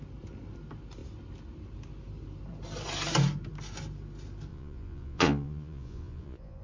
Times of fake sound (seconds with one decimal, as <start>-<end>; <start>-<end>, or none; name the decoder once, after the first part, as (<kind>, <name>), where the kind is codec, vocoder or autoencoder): 4.5-6.6 (vocoder, Vocos)